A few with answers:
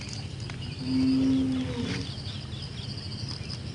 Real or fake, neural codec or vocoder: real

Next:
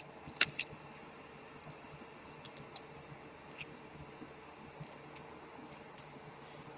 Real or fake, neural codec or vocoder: real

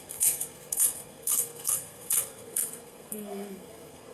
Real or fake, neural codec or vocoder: fake, codec, SNAC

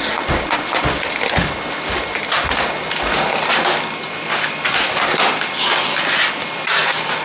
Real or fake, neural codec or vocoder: real